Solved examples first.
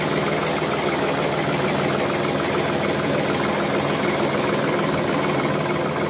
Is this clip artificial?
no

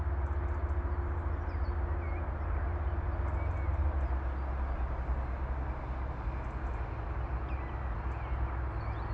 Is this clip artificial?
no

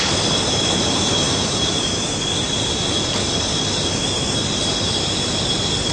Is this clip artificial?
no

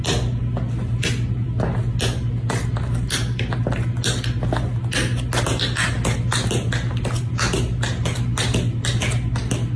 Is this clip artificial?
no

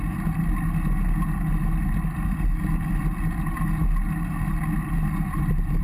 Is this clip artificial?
no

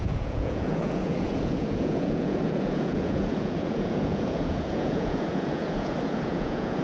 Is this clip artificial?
yes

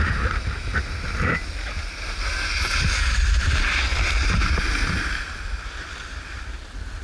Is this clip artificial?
no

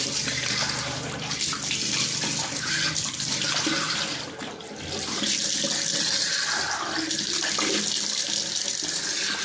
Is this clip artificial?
no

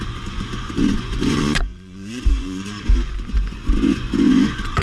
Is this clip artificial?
yes